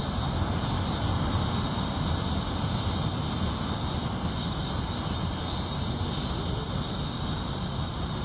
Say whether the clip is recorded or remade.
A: recorded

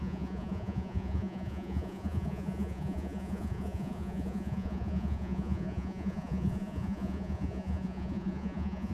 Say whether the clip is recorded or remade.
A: remade